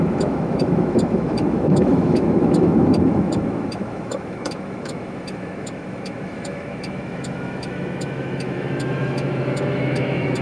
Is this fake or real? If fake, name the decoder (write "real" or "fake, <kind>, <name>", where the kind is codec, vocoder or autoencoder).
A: fake, autoencoder, DAC-VAE